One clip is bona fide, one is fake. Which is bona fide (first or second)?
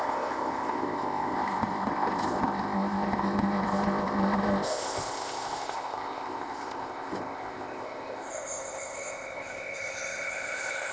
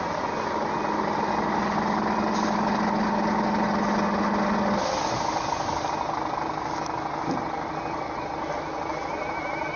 second